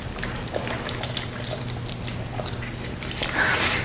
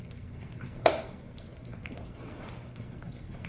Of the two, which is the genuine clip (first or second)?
first